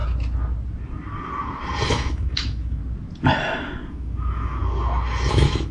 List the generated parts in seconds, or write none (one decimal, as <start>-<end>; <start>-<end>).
1.9-2.8; 3.9-4.6; 5.3-5.7